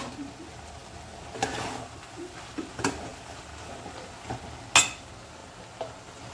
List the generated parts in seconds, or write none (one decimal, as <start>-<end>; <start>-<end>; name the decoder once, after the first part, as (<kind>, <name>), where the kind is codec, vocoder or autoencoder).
none